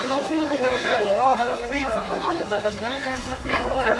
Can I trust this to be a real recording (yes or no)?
no